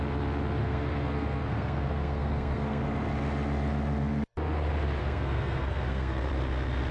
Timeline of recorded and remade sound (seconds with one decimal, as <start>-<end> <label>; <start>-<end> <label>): 0.0-0.6 recorded; 0.6-2.8 remade; 2.8-5.0 recorded; 5.0-6.3 remade; 6.3-6.9 recorded